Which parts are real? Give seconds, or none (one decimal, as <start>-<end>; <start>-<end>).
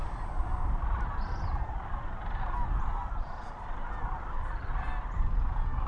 0.0-5.9